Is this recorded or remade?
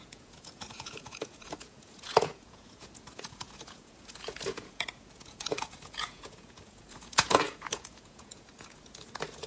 remade